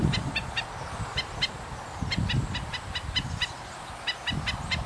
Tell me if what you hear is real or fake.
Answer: real